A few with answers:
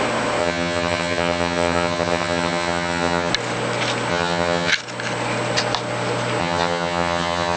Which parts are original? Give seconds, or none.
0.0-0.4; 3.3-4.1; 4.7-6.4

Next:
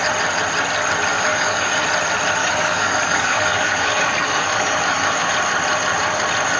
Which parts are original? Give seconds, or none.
0.0-1.1; 1.7-2.4; 5.3-6.6

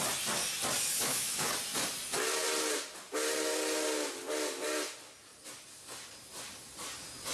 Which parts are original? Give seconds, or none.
0.0-0.9; 1.5-7.3

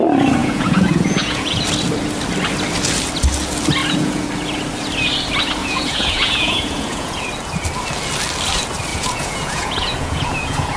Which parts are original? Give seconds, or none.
0.0-0.4; 1.6-3.8; 4.3-5.6; 7.3-8.9

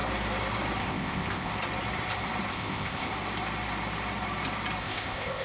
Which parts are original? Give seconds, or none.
0.0-0.8; 1.5-2.5; 3.1-4.8

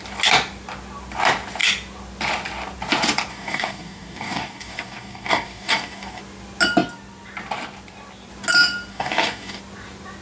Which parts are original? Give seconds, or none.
0.0-3.3; 6.2-8.9; 9.6-10.2

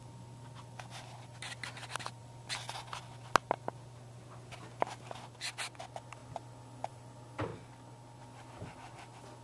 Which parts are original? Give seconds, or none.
0.0-9.4

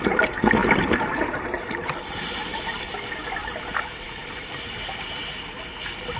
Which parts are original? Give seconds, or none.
0.0-0.6; 2.9-3.4; 4.6-6.2